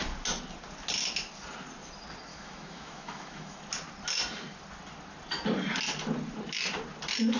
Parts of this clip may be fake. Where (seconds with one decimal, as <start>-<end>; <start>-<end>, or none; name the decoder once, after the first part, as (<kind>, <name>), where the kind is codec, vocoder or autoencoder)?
2.3-3.6 (autoencoder, DAC-VAE)